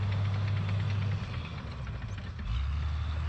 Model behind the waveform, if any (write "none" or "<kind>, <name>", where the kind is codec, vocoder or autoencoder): none